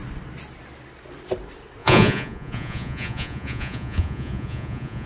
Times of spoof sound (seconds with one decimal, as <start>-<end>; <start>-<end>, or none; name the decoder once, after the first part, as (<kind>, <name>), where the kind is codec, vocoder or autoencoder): 1.8-5.1 (vocoder, Vocos)